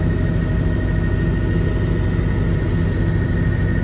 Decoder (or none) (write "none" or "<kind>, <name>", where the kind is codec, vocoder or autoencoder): none